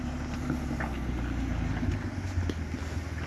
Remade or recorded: recorded